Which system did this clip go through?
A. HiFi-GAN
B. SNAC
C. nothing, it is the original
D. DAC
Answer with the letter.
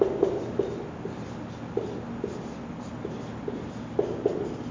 C